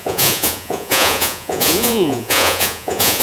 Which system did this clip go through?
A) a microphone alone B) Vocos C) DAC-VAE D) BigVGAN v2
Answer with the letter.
B